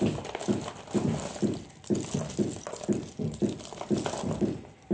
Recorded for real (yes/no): yes